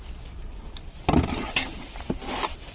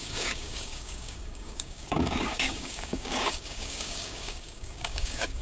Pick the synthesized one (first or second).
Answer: second